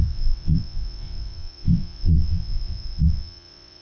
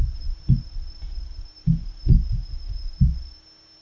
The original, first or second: second